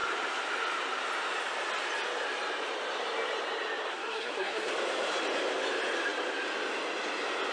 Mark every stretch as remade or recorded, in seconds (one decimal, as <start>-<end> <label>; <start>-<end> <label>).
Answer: 0.0-3.9 recorded; 3.9-4.7 remade; 4.7-7.5 recorded